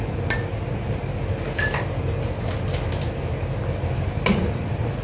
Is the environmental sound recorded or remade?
recorded